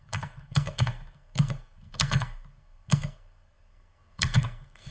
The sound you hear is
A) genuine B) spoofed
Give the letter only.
B